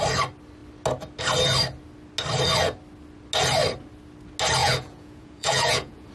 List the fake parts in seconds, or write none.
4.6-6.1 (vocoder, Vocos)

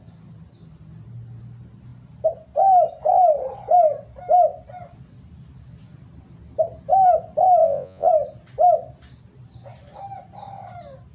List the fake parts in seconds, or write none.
7.6-8.1 (vocoder, Vocos)

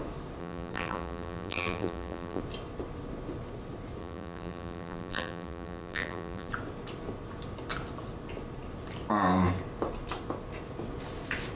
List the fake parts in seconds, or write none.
0.4-2.4 (vocoder, BigVGAN v2); 4.0-6.5

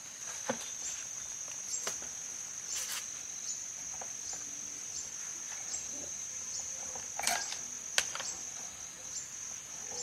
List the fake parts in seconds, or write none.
5.3-7.0 (vocoder, BigVGAN v2)